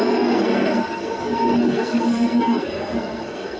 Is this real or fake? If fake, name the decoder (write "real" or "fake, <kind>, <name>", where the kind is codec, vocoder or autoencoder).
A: fake, codec, SNAC